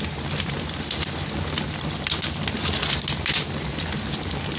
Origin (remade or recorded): recorded